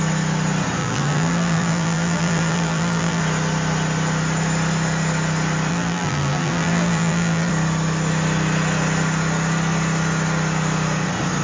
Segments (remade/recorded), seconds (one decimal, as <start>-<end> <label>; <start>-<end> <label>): 0.0-0.8 recorded; 0.8-3.2 remade; 3.2-5.7 recorded; 5.7-7.5 remade; 7.5-11.4 recorded